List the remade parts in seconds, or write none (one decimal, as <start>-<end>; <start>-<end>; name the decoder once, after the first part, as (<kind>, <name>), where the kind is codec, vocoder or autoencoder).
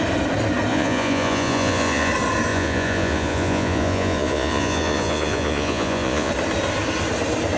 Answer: 0.7-2.1 (vocoder, Vocos); 2.5-6.3